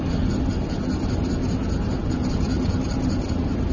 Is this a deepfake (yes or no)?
no